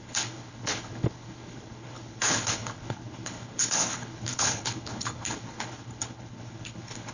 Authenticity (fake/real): fake